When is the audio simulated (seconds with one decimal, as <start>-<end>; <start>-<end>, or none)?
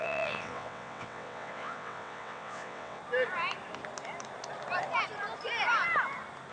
0.0-3.0